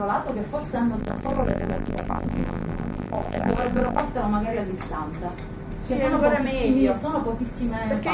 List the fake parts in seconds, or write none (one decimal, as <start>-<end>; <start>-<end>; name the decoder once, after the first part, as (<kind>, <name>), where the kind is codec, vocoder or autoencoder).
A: 1.0-4.0 (vocoder, BigVGAN v2)